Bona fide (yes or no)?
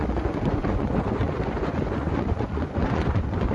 no